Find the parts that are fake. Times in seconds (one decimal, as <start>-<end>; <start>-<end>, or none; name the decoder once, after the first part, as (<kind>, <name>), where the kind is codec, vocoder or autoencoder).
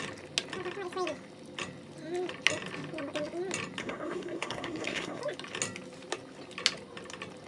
3.8-5.2 (codec, SNAC)